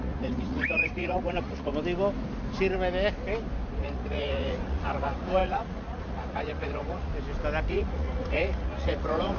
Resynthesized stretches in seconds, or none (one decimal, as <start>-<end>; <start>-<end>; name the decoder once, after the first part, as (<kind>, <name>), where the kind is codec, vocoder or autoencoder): 0.0-1.7 (vocoder, Vocos); 3.8-7.1; 7.7-9.4

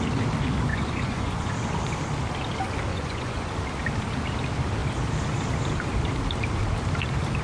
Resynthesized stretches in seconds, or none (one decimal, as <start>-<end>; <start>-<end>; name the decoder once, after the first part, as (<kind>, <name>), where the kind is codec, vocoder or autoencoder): 0.7-1.5 (vocoder, Vocos); 2.9-3.5

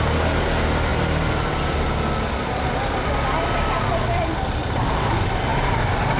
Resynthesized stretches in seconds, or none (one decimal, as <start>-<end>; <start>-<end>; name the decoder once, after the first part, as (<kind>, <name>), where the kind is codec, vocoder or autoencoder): none

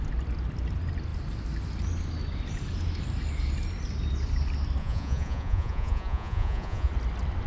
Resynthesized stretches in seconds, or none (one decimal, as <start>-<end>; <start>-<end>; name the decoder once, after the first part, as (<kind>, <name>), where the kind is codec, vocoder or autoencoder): 4.8-6.9 (vocoder, Vocos)

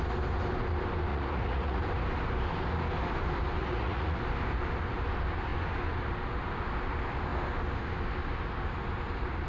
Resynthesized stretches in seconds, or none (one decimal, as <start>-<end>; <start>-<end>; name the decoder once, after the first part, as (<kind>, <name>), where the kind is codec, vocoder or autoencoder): 1.1-1.8 (vocoder, Vocos); 3.6-4.2

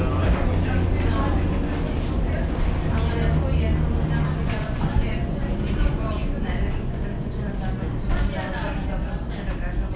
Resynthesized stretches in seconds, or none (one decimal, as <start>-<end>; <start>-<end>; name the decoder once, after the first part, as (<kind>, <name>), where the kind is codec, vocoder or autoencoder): 4.4-7.6 (vocoder, Vocos)

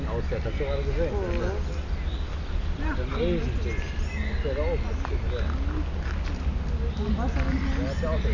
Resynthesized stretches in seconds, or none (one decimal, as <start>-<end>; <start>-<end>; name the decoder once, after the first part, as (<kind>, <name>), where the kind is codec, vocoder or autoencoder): none